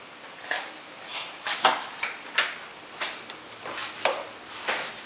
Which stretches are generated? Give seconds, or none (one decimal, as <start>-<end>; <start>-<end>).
1.1-1.9